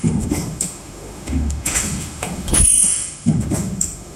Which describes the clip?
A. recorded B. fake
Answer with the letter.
B